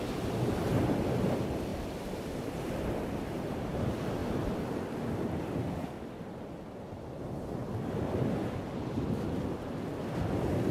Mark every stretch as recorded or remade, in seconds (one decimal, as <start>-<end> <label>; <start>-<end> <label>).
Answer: 0.0-1.7 recorded; 1.7-3.8 remade; 3.8-10.7 recorded